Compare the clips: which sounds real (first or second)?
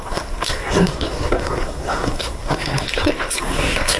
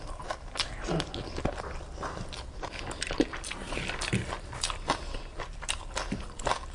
second